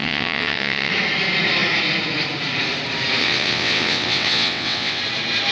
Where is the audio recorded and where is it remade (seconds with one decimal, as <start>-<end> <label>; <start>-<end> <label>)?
0.0-0.9 remade; 0.9-3.2 recorded; 3.2-5.0 remade; 5.0-5.5 recorded